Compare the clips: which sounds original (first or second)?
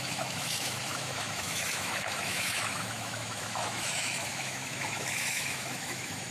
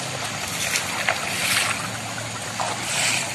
second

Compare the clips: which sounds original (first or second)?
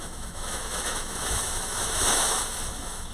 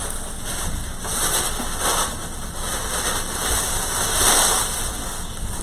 second